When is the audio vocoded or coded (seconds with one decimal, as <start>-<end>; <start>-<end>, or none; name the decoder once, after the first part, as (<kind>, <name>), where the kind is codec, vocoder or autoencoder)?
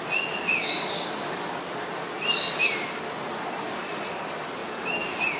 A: none